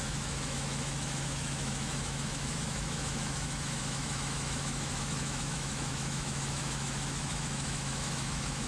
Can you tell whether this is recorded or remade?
remade